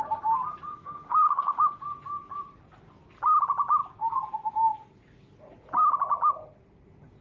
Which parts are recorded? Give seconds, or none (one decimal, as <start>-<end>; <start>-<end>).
0.0-0.7; 1.8-7.2